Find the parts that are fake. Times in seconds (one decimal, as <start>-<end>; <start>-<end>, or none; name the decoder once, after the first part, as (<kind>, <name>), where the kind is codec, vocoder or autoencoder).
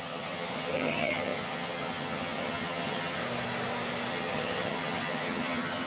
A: 0.0-3.2 (vocoder, HiFi-GAN); 4.1-5.9